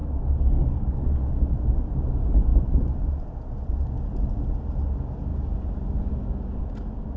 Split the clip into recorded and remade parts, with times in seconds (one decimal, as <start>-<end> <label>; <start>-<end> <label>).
0.0-1.3 remade; 1.3-7.2 recorded